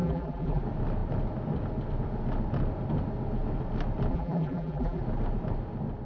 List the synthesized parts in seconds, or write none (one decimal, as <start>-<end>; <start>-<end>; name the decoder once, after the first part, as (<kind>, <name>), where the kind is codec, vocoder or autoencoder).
0.0-0.6 (vocoder, BigVGAN v2); 4.1-5.0